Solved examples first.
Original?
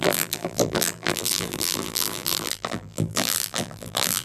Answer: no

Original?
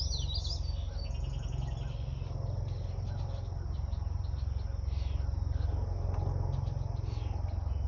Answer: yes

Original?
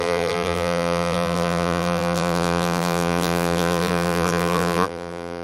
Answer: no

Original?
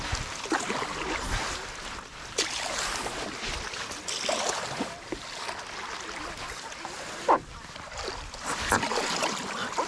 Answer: yes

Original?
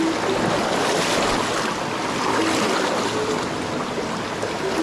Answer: yes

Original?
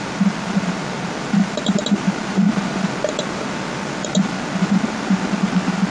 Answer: yes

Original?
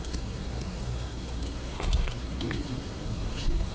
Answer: no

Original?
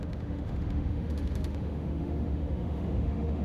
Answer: no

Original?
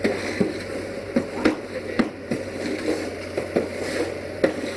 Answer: yes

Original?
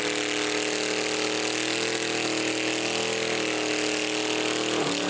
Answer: yes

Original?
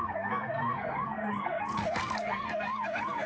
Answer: no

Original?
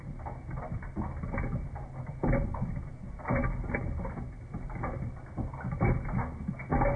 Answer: yes